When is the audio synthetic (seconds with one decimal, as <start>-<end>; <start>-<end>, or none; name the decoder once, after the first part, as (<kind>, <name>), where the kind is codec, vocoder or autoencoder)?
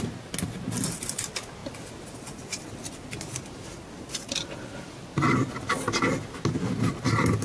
none